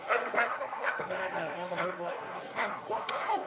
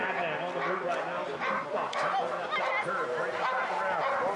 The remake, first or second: first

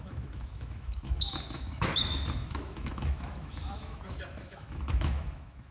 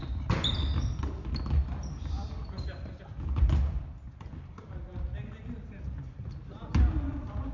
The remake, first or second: first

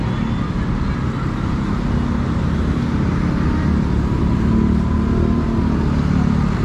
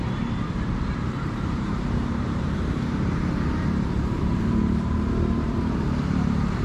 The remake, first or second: second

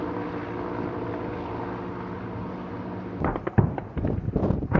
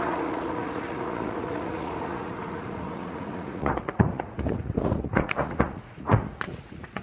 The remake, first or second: second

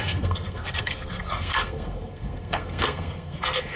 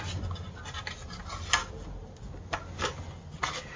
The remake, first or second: first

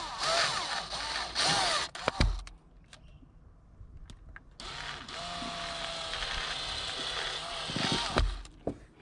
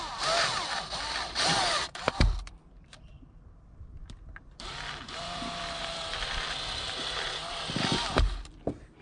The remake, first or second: second